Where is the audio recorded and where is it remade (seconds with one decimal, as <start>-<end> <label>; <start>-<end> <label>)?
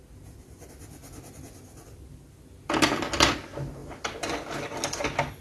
0.0-5.4 recorded